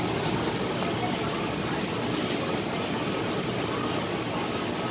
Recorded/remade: recorded